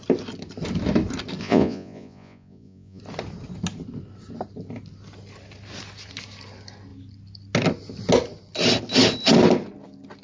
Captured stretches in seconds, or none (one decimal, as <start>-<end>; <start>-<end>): 0.0-1.4; 3.0-10.2